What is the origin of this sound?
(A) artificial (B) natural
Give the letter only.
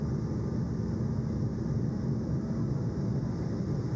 B